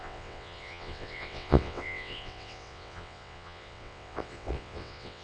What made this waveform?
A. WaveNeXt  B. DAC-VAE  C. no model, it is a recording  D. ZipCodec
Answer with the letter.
A